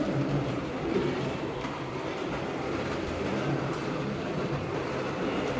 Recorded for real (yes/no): no